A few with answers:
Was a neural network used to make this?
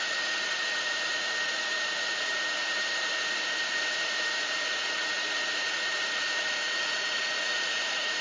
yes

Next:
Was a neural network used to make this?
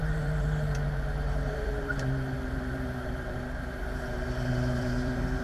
yes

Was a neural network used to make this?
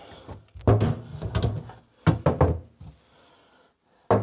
no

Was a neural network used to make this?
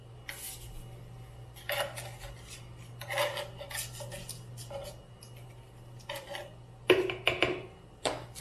no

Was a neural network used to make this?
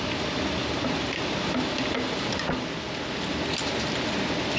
no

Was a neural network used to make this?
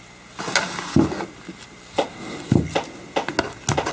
no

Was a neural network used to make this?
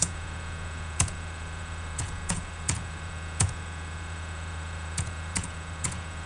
yes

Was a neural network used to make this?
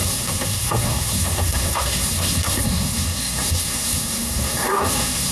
yes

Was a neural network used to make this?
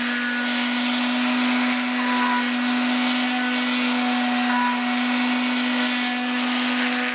no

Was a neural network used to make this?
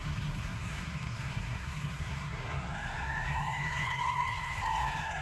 yes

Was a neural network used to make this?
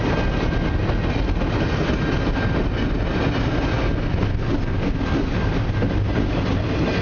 no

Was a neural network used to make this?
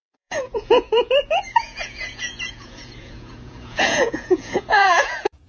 yes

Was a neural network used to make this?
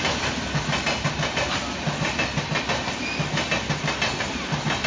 no